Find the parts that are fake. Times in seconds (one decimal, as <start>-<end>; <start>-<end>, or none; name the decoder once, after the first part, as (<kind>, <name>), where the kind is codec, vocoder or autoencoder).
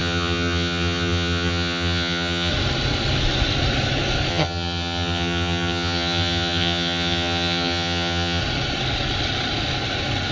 0.0-2.5 (vocoder, HiFi-GAN); 4.3-8.4